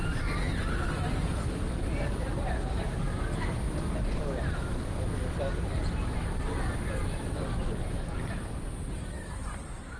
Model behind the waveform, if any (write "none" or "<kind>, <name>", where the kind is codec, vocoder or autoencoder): none